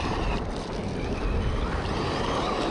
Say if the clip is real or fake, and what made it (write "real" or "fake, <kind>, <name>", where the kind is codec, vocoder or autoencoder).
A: real